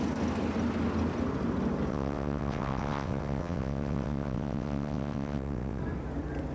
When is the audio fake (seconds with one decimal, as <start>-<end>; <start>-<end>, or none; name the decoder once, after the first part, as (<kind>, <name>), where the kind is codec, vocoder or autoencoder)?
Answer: 1.9-5.8 (vocoder, WaveNeXt)